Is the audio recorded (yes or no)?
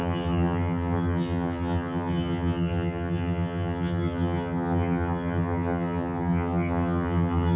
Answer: no